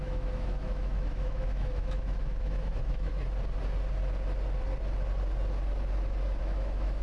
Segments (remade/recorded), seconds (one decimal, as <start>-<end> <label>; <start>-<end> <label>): 0.0-3.1 remade; 3.1-6.4 recorded; 6.4-7.0 remade